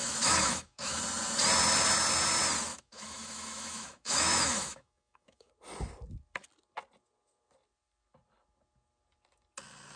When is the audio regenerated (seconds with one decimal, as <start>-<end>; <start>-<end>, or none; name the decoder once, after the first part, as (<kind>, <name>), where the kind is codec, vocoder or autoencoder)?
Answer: 0.0-1.0 (autoencoder, DAC-VAE); 2.7-5.5